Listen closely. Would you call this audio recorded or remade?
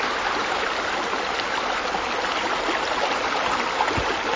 recorded